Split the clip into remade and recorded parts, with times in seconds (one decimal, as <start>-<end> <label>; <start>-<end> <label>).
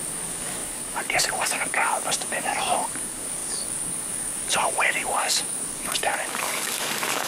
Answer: 0.0-7.3 remade